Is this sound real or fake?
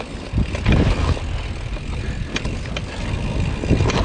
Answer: real